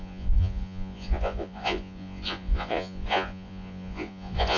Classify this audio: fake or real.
fake